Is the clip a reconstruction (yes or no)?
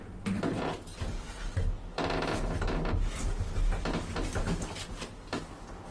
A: no